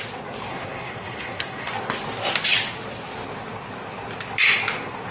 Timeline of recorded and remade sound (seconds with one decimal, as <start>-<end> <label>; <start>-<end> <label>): 0.0-0.5 recorded; 0.5-1.7 remade; 1.7-5.1 recorded